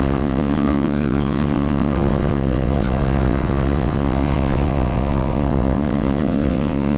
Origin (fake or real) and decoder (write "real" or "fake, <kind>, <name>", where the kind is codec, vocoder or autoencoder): fake, vocoder, WaveNeXt